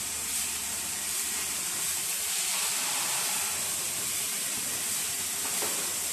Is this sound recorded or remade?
remade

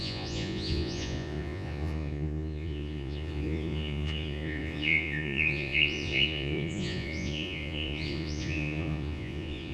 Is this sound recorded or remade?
remade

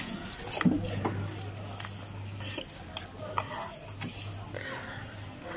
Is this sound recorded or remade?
recorded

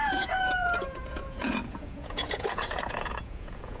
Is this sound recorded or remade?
remade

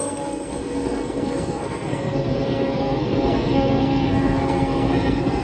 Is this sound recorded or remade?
remade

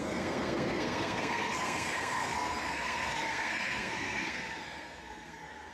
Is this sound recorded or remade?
remade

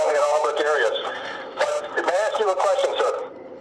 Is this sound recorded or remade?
remade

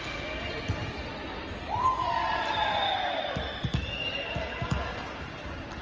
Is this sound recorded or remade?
recorded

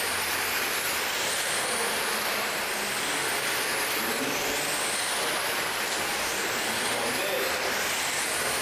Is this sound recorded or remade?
recorded